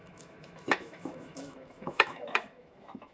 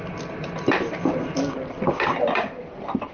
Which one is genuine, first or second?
second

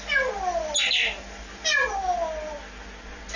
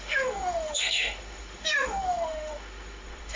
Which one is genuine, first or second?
first